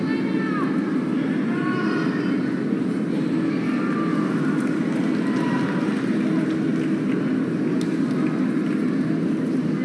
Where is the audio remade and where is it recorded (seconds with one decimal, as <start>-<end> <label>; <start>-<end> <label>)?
0.0-9.8 recorded